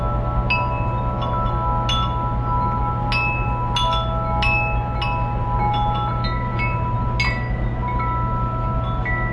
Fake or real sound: real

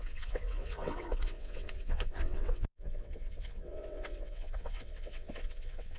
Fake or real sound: fake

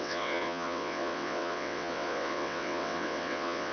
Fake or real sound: fake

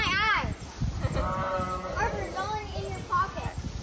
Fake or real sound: real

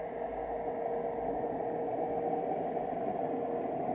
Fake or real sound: real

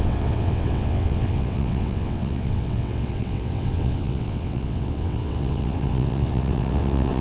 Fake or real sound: fake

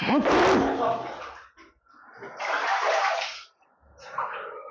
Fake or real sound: real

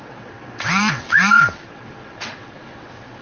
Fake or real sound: fake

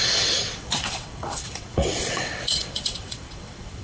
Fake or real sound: fake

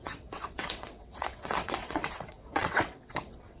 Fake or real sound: fake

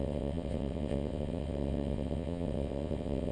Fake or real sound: fake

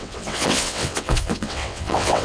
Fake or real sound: fake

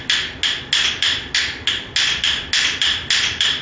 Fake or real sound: real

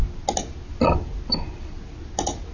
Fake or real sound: real